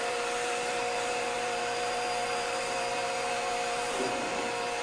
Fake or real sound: fake